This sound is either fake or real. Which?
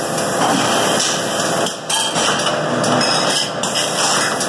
real